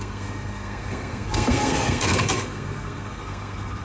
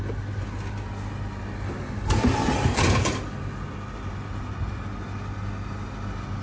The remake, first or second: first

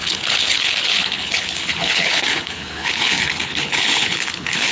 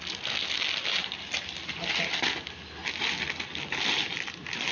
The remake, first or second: first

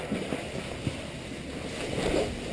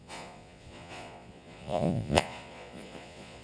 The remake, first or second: second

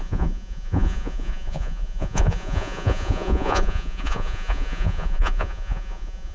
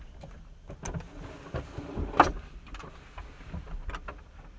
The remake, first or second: first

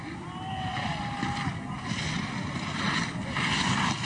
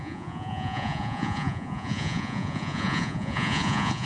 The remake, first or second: second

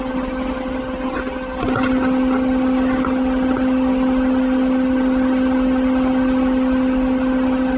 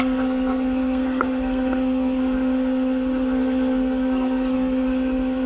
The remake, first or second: second